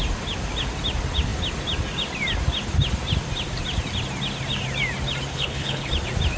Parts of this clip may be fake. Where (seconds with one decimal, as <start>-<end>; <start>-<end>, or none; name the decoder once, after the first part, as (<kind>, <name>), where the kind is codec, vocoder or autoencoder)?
5.3-5.9 (codec, HILCodec)